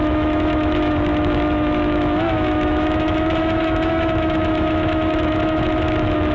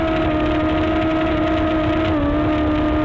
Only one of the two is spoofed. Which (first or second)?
first